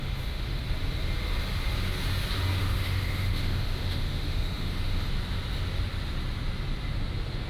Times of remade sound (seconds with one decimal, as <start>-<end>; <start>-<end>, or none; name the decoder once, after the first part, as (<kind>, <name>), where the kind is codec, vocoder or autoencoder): 0.0-0.6 (autoencoder, DAC-VAE); 2.6-5.1